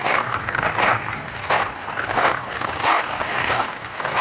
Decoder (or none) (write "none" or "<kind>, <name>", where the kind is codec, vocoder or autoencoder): codec, DAC